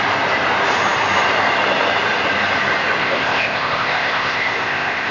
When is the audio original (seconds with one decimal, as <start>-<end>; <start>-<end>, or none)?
0.0-3.0